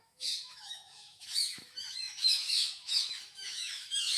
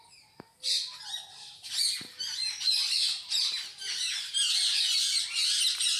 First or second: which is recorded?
second